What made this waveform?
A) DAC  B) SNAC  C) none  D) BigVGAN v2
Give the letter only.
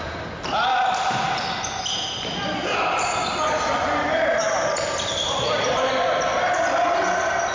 C